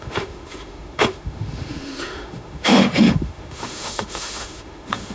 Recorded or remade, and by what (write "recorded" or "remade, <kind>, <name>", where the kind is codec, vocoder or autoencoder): remade, autoencoder, DAC-VAE